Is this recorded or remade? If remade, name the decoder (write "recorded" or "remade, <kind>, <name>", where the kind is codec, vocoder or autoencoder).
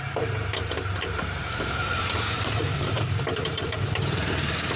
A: remade, vocoder, BigVGAN v2